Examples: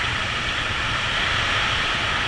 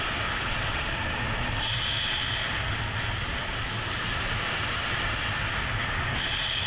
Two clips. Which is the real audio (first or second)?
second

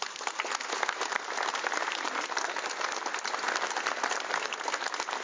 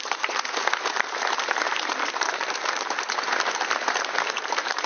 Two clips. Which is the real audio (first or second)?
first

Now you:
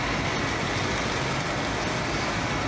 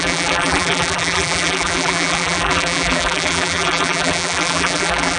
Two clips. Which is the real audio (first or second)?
first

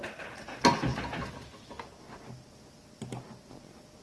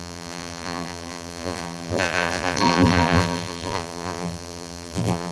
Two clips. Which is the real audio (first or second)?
first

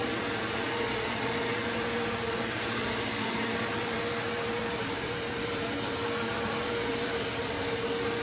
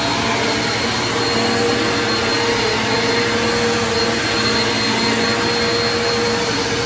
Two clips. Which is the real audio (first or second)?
second